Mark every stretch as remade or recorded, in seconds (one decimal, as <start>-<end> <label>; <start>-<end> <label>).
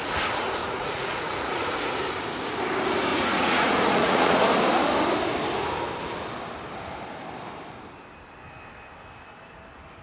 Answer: 0.0-0.6 recorded; 0.6-1.9 remade; 1.9-3.1 recorded; 3.1-4.4 remade; 4.4-10.0 recorded